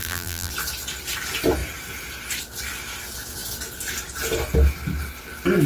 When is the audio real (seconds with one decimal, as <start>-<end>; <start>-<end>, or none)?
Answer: 0.5-5.7